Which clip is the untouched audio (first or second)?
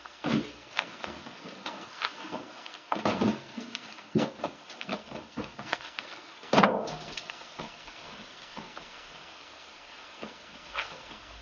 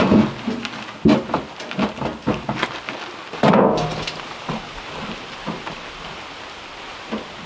second